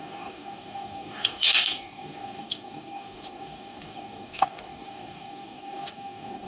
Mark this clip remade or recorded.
remade